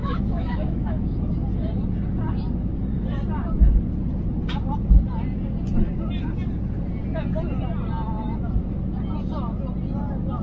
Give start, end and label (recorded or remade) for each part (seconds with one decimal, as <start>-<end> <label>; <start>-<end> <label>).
0.0-1.2 remade; 1.2-10.4 recorded